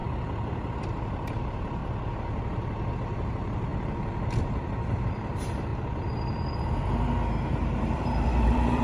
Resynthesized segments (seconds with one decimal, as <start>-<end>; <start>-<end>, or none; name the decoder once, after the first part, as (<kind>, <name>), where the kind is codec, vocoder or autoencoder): 0.9-1.8 (vocoder, BigVGAN v2); 2.9-5.7; 7.8-8.8